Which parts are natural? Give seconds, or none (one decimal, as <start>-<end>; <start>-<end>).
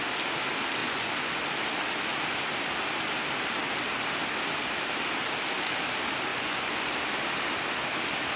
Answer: 0.0-0.8; 1.4-6.3; 6.9-8.4